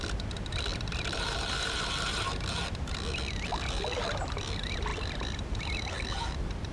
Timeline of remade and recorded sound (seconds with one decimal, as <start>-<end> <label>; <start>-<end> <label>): 0.0-6.7 remade